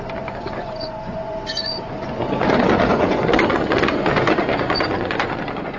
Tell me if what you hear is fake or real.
fake